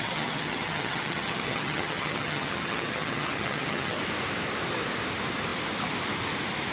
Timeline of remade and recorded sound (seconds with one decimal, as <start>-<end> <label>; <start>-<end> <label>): 0.0-4.0 remade; 4.0-6.7 recorded